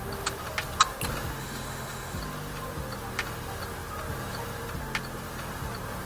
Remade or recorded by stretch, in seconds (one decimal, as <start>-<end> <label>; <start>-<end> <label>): 0.0-1.4 recorded; 1.4-2.2 remade; 2.2-6.1 recorded